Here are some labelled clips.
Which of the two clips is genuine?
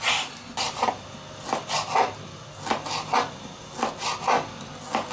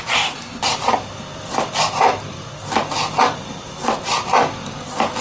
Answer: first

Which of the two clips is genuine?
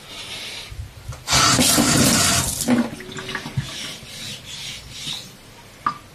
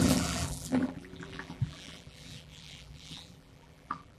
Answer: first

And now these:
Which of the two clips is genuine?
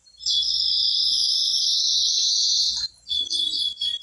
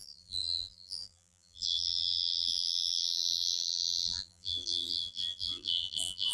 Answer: first